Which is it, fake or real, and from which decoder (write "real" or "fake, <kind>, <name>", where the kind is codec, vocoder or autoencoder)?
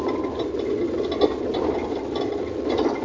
real